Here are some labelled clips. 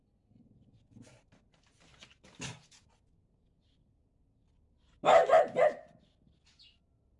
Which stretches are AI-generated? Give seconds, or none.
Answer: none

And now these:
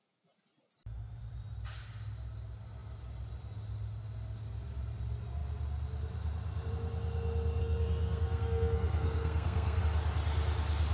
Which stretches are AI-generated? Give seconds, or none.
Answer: 7.6-9.8

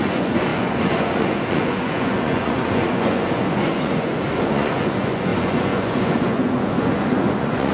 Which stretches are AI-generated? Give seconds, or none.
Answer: 0.0-7.7

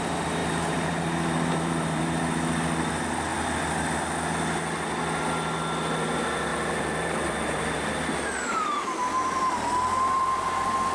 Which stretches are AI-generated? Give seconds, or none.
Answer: 0.4-2.0; 6.5-8.0

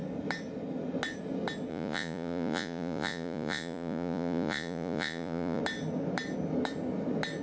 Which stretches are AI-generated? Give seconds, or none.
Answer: 1.7-5.6